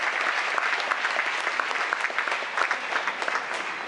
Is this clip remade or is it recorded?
recorded